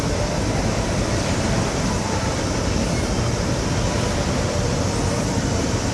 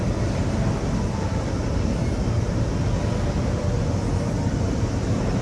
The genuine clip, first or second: second